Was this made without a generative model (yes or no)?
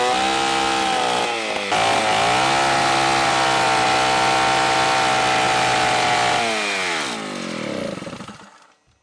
yes